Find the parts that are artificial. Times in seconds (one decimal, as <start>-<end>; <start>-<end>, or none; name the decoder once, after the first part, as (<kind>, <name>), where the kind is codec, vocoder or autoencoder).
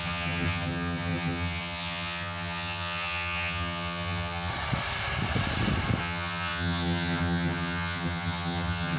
0.0-4.5 (vocoder, HiFi-GAN); 6.0-9.0